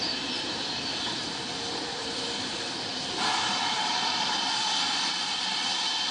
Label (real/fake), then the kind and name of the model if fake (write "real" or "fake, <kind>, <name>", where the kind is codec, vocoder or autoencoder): fake, vocoder, BigVGAN v2